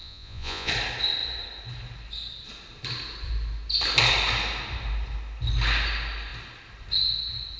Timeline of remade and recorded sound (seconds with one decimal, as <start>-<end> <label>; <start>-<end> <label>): 0.0-0.7 remade; 0.7-7.6 recorded